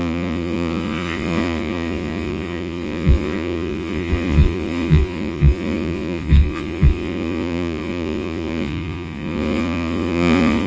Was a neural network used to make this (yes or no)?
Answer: yes